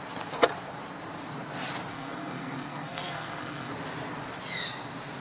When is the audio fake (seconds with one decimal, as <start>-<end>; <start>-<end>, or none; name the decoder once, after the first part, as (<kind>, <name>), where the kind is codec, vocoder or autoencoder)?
1.9-3.7 (codec, SNAC)